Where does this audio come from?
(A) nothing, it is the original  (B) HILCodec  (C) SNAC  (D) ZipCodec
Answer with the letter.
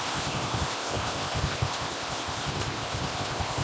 D